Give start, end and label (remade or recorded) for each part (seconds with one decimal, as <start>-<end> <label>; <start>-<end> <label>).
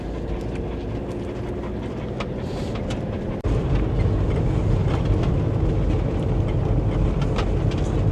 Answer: 0.0-8.1 recorded